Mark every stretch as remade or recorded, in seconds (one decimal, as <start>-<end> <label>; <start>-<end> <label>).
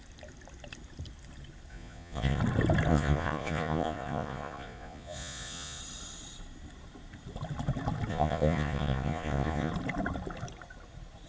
0.0-1.7 recorded; 1.7-2.4 remade; 2.4-2.9 recorded; 2.9-5.8 remade; 5.8-8.1 recorded; 8.1-9.7 remade; 9.7-11.3 recorded